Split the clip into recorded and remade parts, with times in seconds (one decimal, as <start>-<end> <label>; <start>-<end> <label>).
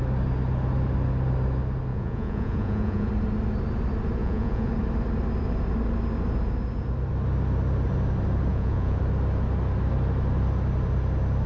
0.0-1.9 recorded; 1.9-3.1 remade; 3.1-4.2 recorded; 4.2-4.7 remade; 4.7-8.5 recorded; 8.5-9.0 remade; 9.0-11.5 recorded